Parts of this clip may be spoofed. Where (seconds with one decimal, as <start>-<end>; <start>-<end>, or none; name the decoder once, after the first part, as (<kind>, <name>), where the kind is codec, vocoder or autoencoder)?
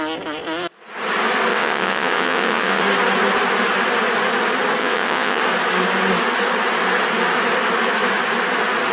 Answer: 1.5-2.8 (vocoder, WaveNeXt); 4.8-5.4